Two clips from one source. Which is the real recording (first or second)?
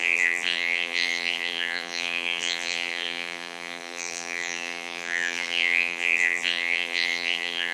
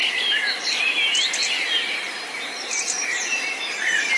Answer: second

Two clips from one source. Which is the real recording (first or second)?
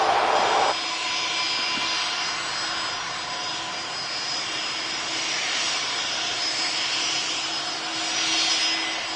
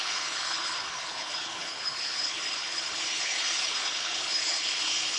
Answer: first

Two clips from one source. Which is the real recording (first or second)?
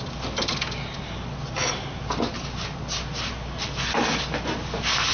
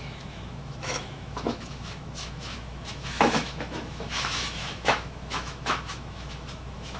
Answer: first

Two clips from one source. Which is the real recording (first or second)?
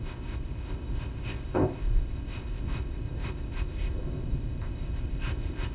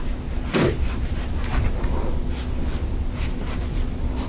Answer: second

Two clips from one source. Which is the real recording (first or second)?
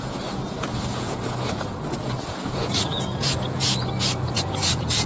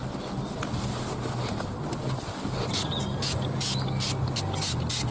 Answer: second